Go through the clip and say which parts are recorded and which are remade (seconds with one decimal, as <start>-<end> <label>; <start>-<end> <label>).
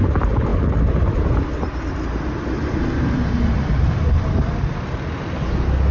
0.0-5.9 recorded